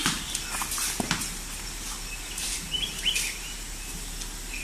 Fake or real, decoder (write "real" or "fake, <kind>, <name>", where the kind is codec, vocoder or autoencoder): real